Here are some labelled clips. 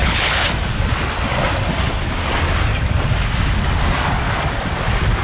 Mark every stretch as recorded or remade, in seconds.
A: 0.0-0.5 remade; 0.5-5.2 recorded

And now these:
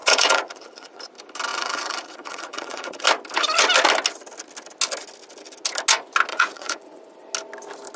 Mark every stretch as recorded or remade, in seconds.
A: 0.0-1.0 remade; 1.0-1.5 recorded; 1.5-3.0 remade; 3.0-6.3 recorded; 6.3-7.0 remade; 7.0-8.0 recorded

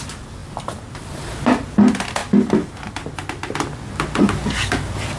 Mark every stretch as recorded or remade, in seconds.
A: 0.0-0.4 recorded; 0.4-1.1 remade; 1.1-5.2 recorded

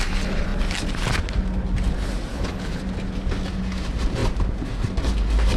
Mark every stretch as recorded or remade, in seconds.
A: 0.0-2.3 recorded; 2.3-2.8 remade; 2.8-5.6 recorded

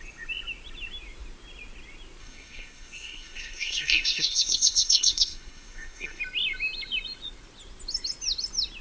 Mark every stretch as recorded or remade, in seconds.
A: 0.0-2.2 recorded; 2.2-6.2 remade; 6.2-8.8 recorded